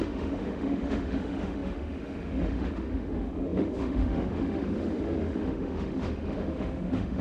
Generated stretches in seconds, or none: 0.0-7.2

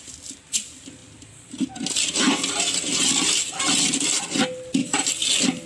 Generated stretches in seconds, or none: none

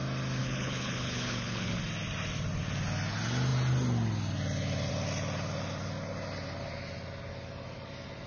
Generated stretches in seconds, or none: 0.4-1.8

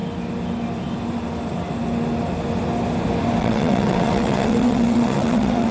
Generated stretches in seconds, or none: 3.4-5.7

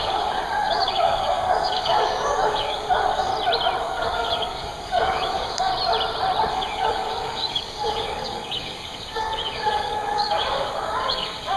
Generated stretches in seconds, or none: 0.0-3.3; 3.8-5.7; 6.5-11.6

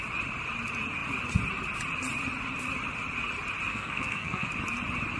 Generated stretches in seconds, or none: 3.7-4.5

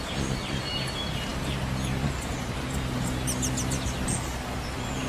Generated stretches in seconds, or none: none